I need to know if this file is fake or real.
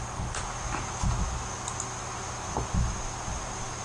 real